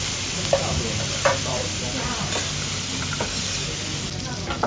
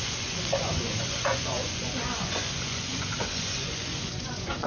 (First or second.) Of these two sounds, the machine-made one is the second